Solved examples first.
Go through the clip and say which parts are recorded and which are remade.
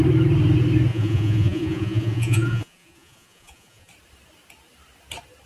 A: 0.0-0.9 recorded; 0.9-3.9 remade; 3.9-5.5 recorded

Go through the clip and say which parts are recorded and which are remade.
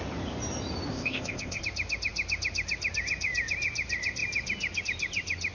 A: 0.0-0.9 recorded; 0.9-1.6 remade; 1.6-5.5 recorded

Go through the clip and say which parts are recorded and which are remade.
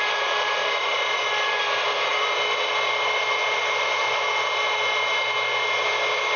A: 0.0-6.4 recorded